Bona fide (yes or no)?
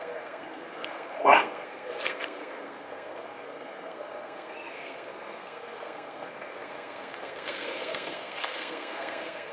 no